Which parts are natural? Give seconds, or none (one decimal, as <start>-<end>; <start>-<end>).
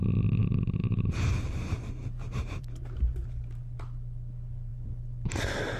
0.0-0.8; 3.8-5.8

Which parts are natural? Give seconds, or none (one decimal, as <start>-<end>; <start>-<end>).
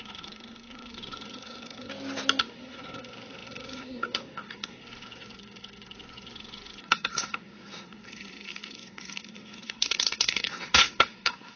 1.9-2.4